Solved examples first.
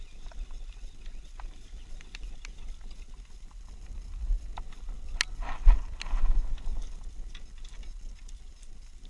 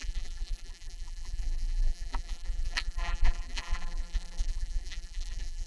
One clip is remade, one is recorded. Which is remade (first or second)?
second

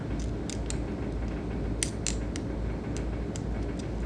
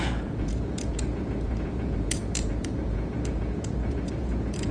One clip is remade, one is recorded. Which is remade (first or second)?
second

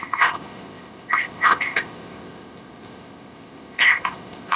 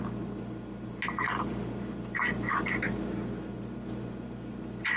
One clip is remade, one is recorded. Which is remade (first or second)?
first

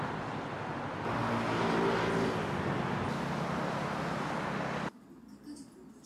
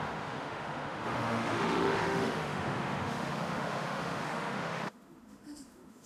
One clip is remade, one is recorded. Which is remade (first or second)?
second